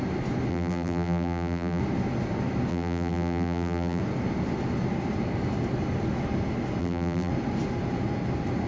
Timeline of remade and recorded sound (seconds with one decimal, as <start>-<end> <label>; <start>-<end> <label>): 0.0-0.5 recorded; 0.5-1.8 remade; 1.8-2.7 recorded; 2.7-4.0 remade; 4.0-6.8 recorded; 6.8-7.3 remade; 7.3-8.7 recorded